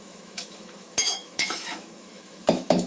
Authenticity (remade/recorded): remade